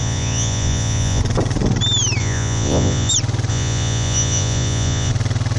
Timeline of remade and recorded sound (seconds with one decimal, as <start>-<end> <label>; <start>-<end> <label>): 0.0-1.2 remade; 1.2-2.2 recorded; 2.2-3.1 remade; 3.1-3.5 recorded; 3.5-5.1 remade; 5.1-5.6 recorded